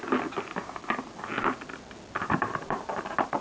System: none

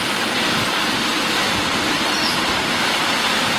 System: vocoder, BigVGAN v2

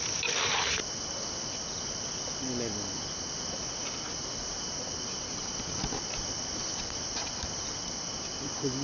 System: none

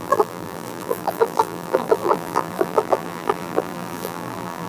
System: vocoder, BigVGAN v2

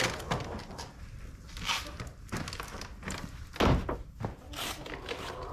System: none